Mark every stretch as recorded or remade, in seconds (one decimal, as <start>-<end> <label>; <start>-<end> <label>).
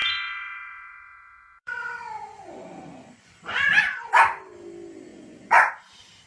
0.0-3.8 remade; 3.8-5.1 recorded; 5.1-5.7 remade; 5.7-6.3 recorded